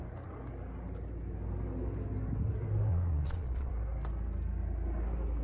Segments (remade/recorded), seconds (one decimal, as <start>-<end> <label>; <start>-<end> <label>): 0.0-2.9 recorded; 2.9-3.7 remade; 3.7-5.4 recorded

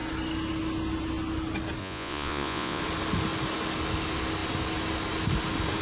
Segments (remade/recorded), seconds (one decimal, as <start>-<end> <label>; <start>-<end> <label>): 0.0-1.8 recorded; 1.8-2.8 remade; 2.8-5.8 recorded

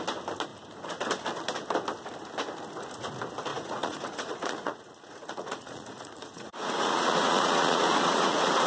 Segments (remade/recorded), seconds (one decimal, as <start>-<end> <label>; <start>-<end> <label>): 0.0-3.5 recorded; 3.5-8.7 remade

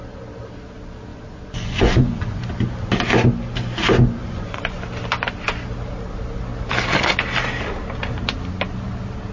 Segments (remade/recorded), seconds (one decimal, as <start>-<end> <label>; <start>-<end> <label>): 0.0-1.1 recorded; 1.1-2.4 remade; 2.4-4.2 recorded; 4.2-4.8 remade; 4.8-9.3 recorded

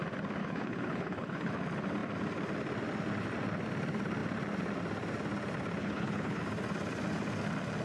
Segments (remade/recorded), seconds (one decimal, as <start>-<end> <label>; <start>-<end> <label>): 0.0-0.4 recorded; 0.4-1.5 remade; 1.5-5.8 recorded; 5.8-6.4 remade; 6.4-7.8 recorded

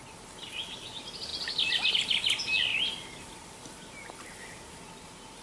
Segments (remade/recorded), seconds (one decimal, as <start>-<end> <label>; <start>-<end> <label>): 0.0-5.4 recorded

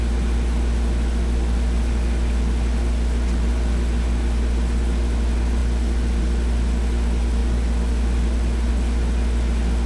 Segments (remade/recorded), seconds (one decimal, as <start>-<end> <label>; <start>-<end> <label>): 0.0-9.9 recorded

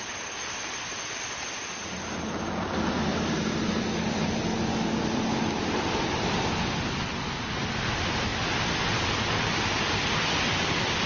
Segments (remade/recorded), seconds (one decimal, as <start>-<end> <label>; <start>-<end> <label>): 0.0-11.1 recorded